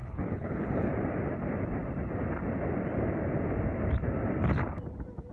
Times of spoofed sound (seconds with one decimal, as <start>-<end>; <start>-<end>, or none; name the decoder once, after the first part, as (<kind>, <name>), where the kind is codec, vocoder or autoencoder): 0.0-0.9 (codec, HILCodec)